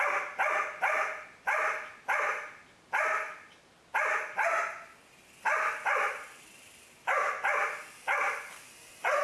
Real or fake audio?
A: real